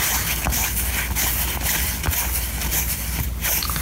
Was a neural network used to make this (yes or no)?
no